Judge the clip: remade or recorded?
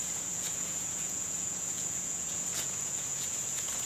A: remade